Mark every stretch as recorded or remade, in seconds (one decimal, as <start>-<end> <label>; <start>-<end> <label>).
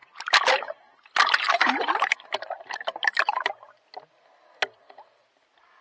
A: 0.0-3.5 remade; 3.5-5.8 recorded